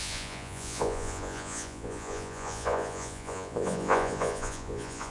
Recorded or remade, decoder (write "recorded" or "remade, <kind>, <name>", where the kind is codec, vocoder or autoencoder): remade, vocoder, Vocos